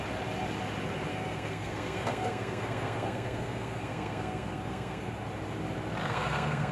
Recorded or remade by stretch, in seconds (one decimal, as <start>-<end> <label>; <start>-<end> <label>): 0.0-1.1 recorded; 1.1-5.1 remade; 5.1-6.0 recorded; 6.0-6.7 remade